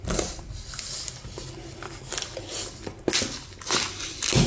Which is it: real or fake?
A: real